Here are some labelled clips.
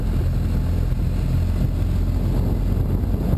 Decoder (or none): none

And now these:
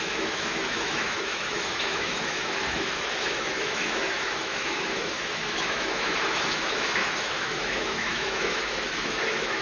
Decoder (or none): autoencoder, DAC-VAE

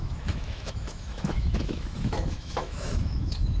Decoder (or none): autoencoder, DAC-VAE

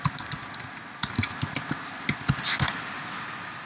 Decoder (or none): none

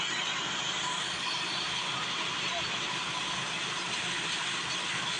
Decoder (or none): none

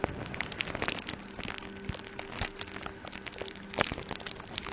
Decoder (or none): none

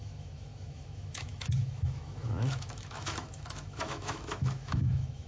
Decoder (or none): autoencoder, DAC-VAE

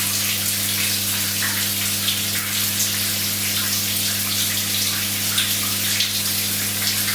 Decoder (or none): none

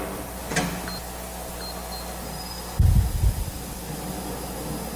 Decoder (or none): none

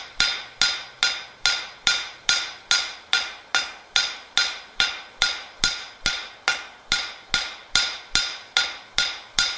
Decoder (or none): none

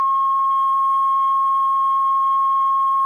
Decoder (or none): autoencoder, DAC-VAE